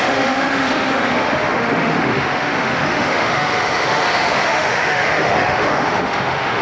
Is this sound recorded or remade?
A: remade